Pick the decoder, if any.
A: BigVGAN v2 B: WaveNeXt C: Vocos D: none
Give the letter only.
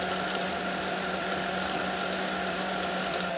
D